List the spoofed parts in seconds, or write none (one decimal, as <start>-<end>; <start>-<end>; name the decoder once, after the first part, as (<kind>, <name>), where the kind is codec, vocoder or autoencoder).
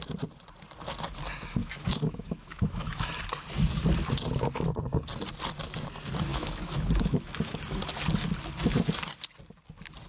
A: 1.6-3.1 (autoencoder, DAC-VAE); 6.3-7.8